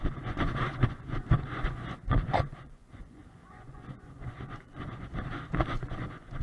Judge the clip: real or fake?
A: fake